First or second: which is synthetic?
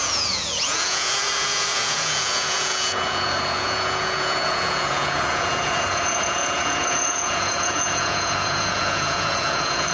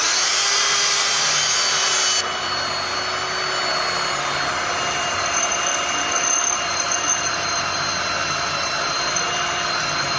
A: first